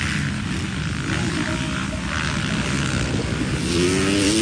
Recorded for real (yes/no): yes